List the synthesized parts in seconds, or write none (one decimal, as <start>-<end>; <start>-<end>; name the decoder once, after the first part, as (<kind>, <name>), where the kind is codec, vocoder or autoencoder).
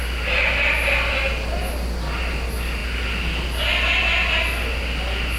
none